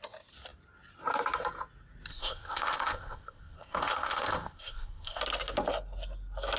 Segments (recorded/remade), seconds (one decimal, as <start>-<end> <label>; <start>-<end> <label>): 0.0-2.1 recorded; 2.1-5.2 remade; 5.2-6.6 recorded